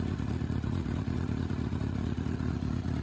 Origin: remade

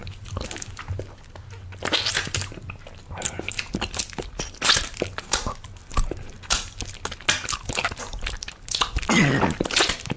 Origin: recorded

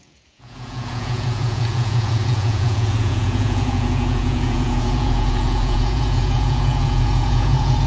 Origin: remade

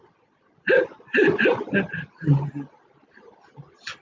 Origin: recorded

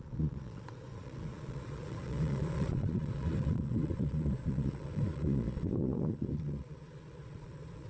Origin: remade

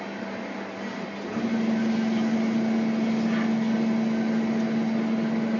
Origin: recorded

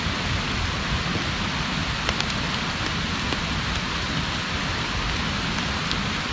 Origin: recorded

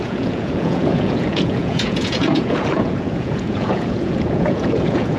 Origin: remade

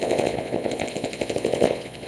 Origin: remade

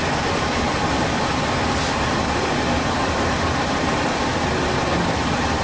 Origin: recorded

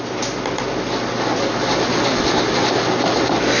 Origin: recorded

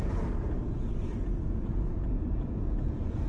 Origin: remade